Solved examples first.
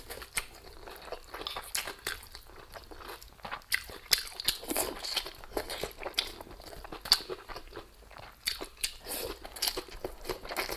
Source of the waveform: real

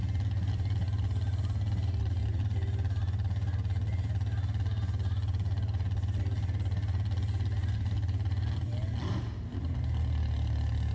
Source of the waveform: real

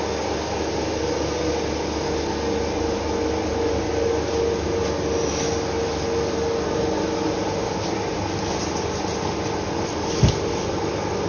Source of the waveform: real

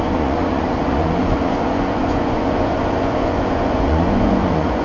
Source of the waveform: fake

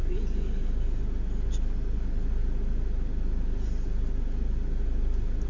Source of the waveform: real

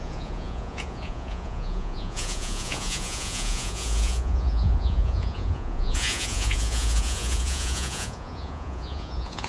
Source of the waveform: fake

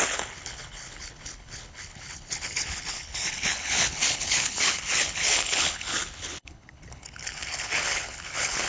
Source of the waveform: fake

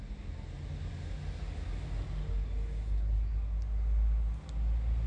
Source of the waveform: real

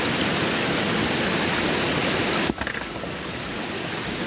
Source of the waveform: real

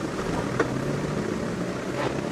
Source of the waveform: real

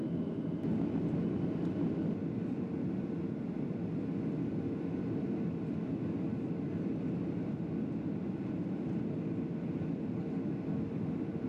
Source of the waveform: real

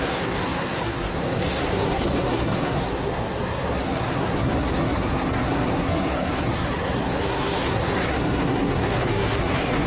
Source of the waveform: fake